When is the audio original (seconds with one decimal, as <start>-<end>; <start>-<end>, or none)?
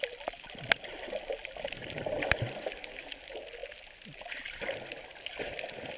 0.0-6.0